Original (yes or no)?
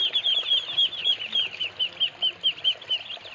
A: yes